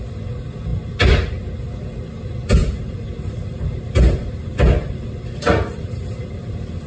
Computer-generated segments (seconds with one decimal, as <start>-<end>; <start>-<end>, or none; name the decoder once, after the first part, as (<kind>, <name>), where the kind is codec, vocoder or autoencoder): 2.6-6.9 (vocoder, BigVGAN v2)